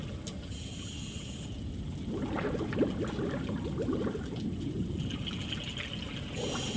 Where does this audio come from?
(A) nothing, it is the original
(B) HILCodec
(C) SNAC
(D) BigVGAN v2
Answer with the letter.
A